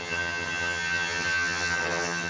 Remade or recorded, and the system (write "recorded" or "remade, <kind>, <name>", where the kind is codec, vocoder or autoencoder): remade, vocoder, HiFi-GAN